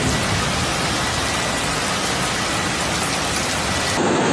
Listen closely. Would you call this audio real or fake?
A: real